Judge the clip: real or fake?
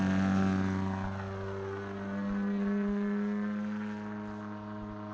real